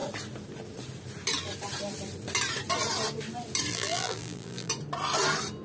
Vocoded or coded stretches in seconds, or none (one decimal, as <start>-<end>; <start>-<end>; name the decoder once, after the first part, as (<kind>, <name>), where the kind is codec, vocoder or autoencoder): 3.7-4.7 (vocoder, BigVGAN v2)